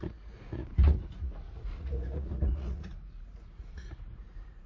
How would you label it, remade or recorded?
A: remade